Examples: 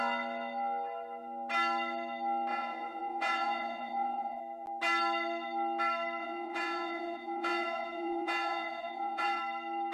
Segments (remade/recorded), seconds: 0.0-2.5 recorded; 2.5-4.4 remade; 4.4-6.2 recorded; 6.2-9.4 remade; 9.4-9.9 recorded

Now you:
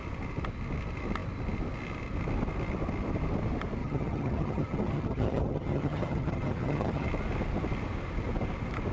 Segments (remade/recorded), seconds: 0.0-3.8 recorded; 3.8-7.1 remade; 7.1-8.9 recorded

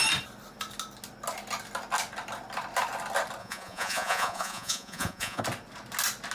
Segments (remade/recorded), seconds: 0.0-3.4 recorded; 3.4-5.4 remade; 5.4-6.3 recorded

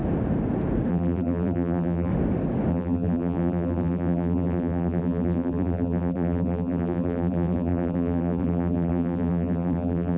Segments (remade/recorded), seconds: 0.0-0.9 recorded; 0.9-2.1 remade; 2.1-2.7 recorded; 2.7-10.2 remade